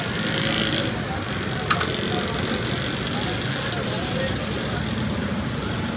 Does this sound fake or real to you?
real